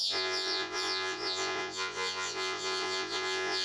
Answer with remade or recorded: remade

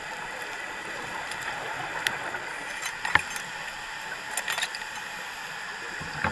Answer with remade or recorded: recorded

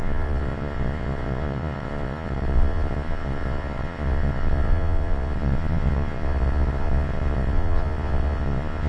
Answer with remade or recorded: remade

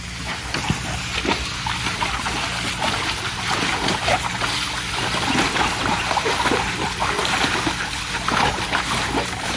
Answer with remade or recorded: recorded